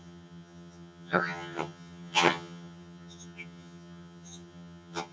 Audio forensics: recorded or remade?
remade